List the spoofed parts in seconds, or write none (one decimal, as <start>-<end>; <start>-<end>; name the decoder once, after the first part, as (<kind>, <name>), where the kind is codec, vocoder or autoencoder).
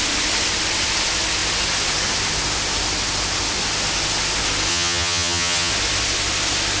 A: 4.7-5.7 (vocoder, HiFi-GAN)